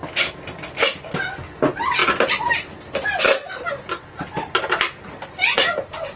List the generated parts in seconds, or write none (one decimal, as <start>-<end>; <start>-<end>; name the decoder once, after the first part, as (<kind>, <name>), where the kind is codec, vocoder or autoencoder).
none